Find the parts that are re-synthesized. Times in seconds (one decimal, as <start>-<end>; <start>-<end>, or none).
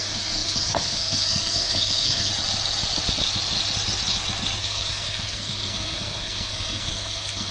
0.0-2.3; 4.6-7.5